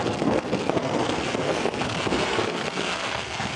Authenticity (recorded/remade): remade